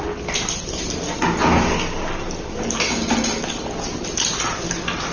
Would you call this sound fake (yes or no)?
no